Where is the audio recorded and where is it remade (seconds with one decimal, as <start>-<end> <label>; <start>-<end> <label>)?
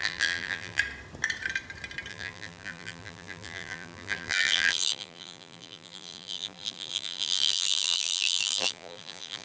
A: 0.0-0.8 remade; 0.8-2.1 recorded; 2.1-9.4 remade